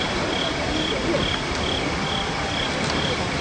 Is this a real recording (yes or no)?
yes